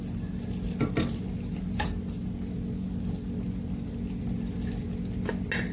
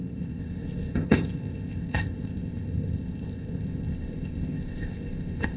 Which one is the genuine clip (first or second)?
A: first